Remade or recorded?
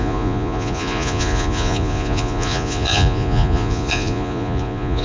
remade